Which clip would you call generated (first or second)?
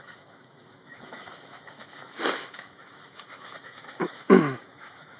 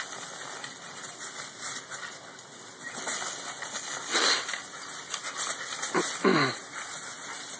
first